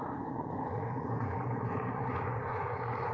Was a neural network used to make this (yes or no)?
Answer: yes